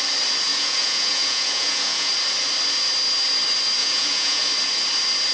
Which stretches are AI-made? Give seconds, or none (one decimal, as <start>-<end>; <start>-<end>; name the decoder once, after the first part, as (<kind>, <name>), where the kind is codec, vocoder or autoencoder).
0.5-2.1 (vocoder, Vocos); 3.8-4.5